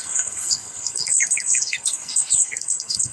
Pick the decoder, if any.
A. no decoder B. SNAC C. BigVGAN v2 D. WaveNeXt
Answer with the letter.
B